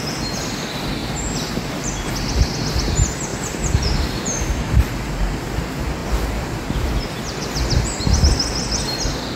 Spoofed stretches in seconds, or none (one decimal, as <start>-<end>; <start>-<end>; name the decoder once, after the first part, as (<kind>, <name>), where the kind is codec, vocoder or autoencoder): 1.0-2.1 (vocoder, BigVGAN v2); 3.3-5.6